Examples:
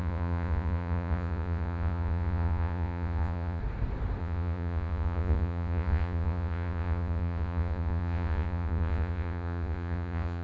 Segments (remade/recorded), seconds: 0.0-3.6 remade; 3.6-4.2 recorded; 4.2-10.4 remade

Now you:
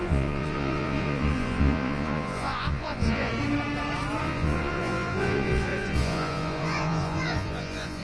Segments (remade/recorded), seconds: 0.0-3.3 remade; 3.3-4.2 recorded; 4.2-8.0 remade

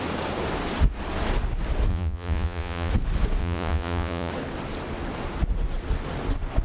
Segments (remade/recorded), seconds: 0.0-1.9 recorded; 1.9-2.9 remade; 2.9-3.4 recorded; 3.4-4.3 remade; 4.3-6.6 recorded

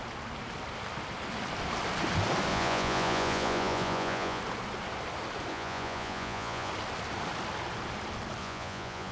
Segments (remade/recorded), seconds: 0.0-2.5 recorded; 2.5-4.4 remade; 4.4-5.5 recorded; 5.5-6.7 remade; 6.7-8.4 recorded; 8.4-9.1 remade

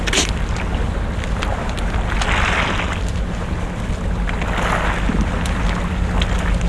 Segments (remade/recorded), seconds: 0.0-6.7 recorded